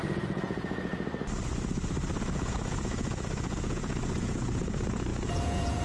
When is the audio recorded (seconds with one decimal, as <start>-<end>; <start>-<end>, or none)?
0.9-2.2